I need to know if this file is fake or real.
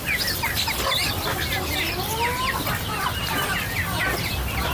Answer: real